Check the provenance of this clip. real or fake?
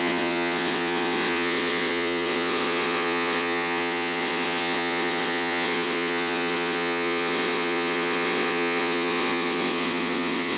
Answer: fake